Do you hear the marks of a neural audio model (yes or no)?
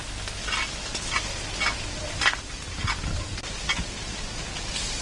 no